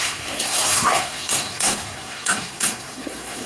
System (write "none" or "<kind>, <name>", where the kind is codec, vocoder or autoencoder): codec, SNAC